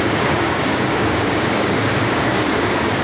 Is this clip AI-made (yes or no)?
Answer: yes